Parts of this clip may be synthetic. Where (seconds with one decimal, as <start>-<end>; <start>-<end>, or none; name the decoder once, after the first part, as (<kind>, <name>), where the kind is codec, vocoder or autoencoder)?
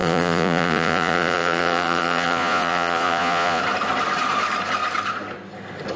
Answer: 0.0-3.6 (vocoder, Vocos)